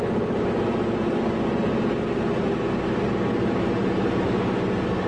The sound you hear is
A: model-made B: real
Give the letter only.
B